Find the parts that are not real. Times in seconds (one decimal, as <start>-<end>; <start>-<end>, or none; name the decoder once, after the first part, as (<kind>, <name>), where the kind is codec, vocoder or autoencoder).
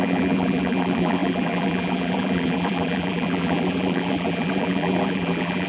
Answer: 0.0-5.7 (vocoder, BigVGAN v2)